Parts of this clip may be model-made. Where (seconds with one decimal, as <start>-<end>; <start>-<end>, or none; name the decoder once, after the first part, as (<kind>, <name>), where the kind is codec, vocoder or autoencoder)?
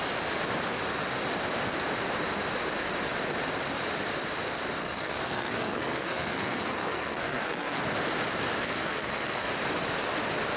4.8-7.8 (codec, SNAC); 8.6-9.5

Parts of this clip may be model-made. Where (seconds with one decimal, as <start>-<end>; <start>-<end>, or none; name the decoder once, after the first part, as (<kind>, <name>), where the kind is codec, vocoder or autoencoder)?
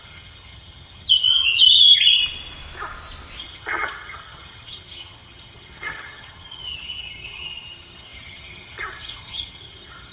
0.0-2.2 (vocoder, HiFi-GAN); 3.4-10.1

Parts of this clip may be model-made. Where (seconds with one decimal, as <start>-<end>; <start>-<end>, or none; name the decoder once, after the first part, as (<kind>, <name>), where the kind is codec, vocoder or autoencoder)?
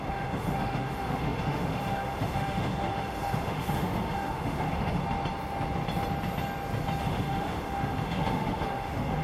0.0-5.0 (autoencoder, DAC-VAE); 7.0-9.2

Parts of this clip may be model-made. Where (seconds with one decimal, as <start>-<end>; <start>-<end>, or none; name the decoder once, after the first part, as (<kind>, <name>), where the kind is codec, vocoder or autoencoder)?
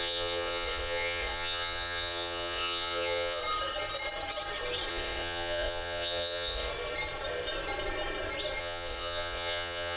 0.0-3.4 (vocoder, Vocos); 4.9-6.7; 8.6-10.0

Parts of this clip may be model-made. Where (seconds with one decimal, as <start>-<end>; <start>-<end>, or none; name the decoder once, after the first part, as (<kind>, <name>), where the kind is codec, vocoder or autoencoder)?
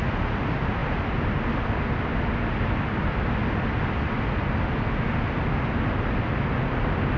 none